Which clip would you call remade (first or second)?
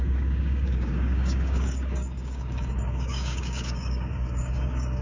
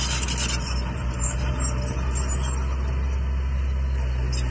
first